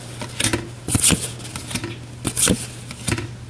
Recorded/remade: recorded